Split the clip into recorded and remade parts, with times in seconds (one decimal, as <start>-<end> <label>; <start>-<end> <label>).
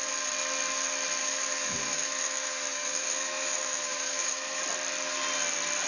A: 0.0-1.2 recorded; 1.2-4.6 remade; 4.6-5.9 recorded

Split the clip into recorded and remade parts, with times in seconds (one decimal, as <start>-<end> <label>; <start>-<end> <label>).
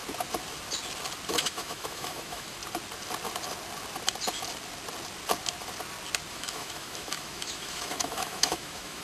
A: 0.0-1.3 recorded; 1.3-2.6 remade; 2.6-6.3 recorded; 6.3-9.0 remade